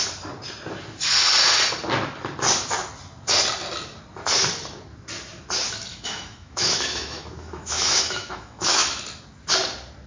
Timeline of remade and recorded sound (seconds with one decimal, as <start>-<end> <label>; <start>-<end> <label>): 0.0-5.9 recorded; 5.9-9.0 remade; 9.0-10.1 recorded